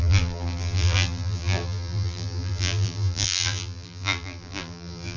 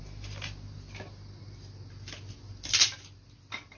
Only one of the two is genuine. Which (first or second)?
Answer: second